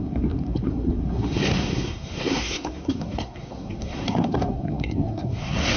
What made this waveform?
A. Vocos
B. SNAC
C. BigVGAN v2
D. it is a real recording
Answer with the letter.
B